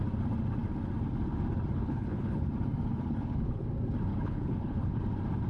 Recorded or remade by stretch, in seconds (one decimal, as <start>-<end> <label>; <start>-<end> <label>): 0.0-1.7 recorded; 1.7-2.5 remade; 2.5-2.9 recorded; 2.9-3.6 remade; 3.6-4.1 recorded; 4.1-5.0 remade; 5.0-5.5 recorded